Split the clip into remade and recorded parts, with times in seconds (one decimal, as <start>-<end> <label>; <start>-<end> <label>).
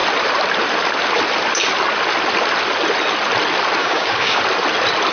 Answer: 0.0-3.8 recorded; 3.8-4.4 remade; 4.4-5.1 recorded